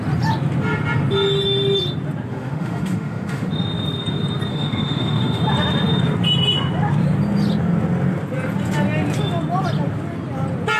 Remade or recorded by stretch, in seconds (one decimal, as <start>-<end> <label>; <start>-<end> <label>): 0.0-2.3 recorded; 2.3-3.5 remade; 3.5-4.5 recorded; 4.5-5.4 remade; 5.4-10.8 recorded